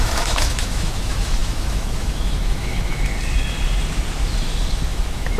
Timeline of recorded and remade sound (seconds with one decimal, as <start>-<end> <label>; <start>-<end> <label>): 0.0-3.1 remade; 3.1-4.9 recorded; 4.9-5.4 remade